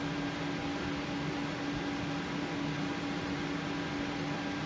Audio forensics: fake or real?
real